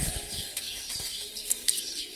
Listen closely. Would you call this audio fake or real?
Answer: fake